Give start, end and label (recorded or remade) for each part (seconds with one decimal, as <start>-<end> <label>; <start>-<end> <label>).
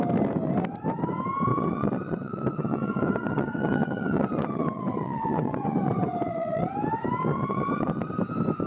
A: 0.0-1.5 recorded; 1.5-6.7 remade; 6.7-7.3 recorded; 7.3-8.1 remade; 8.1-8.7 recorded